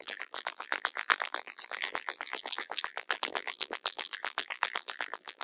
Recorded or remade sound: remade